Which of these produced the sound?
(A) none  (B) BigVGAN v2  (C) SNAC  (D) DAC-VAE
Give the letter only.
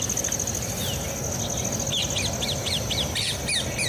A